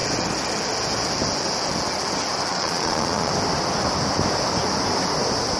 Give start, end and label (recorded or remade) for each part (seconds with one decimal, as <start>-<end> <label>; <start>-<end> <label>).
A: 0.0-2.5 recorded; 2.5-3.3 remade; 3.3-5.6 recorded